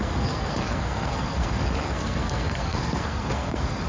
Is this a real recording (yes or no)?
no